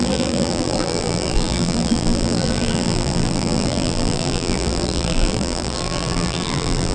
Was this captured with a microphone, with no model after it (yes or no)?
no